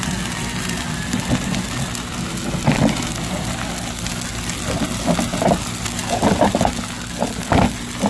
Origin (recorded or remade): recorded